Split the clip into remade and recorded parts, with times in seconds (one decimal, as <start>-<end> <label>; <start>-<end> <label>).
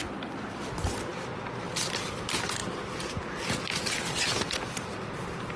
0.0-5.6 recorded